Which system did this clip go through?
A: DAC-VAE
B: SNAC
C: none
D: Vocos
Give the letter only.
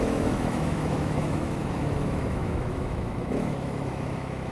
A